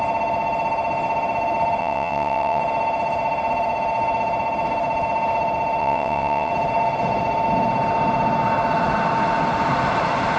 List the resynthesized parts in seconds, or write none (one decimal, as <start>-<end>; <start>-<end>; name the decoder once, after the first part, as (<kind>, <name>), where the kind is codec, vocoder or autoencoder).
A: 1.8-2.6 (vocoder, WaveNeXt); 5.8-6.5